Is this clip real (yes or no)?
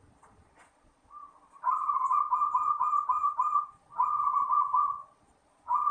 no